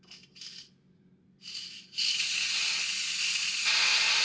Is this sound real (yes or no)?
yes